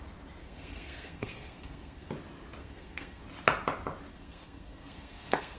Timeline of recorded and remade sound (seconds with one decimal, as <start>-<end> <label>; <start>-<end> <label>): 0.0-0.4 recorded; 0.4-2.1 remade; 2.1-2.6 recorded; 2.6-3.2 remade; 3.2-4.1 recorded; 4.1-5.6 remade